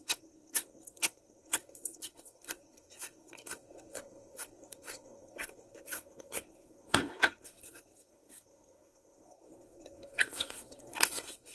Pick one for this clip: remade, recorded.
remade